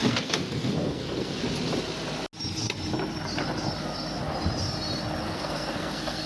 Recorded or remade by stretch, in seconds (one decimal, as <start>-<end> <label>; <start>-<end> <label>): 0.0-1.4 remade; 1.4-5.2 recorded; 5.2-6.3 remade